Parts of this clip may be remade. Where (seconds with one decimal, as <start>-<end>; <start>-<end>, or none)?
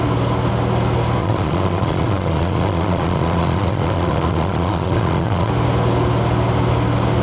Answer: 1.2-5.5